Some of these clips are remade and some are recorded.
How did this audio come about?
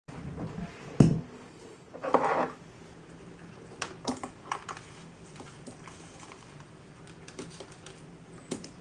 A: recorded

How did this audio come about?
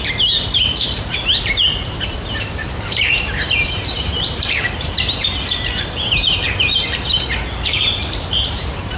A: remade